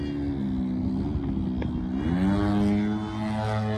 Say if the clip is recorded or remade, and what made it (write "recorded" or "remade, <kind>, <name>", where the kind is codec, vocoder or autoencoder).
recorded